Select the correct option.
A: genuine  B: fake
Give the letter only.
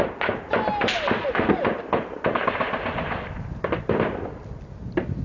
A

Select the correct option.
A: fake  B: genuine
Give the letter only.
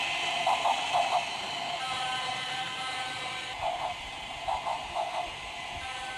B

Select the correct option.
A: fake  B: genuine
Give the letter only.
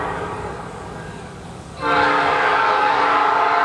A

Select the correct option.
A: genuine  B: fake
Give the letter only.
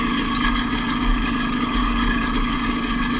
B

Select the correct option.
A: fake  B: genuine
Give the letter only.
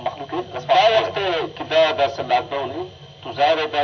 B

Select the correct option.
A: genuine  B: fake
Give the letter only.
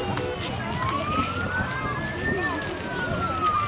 A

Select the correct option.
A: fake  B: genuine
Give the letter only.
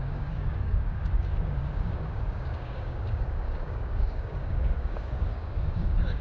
A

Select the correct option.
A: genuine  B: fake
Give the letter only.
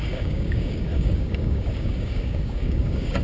B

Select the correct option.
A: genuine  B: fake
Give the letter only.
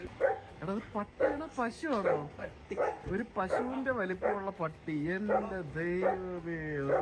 B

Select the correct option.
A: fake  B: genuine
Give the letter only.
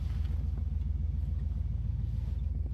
B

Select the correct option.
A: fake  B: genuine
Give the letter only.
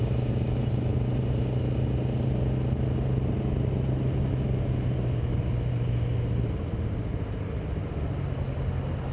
B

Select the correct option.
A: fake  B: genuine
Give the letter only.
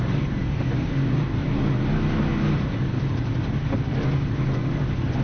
B